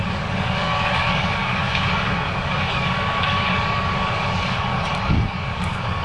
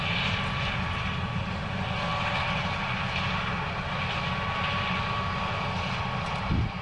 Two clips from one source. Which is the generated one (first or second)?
first